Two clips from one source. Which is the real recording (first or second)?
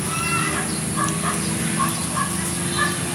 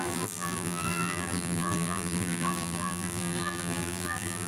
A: first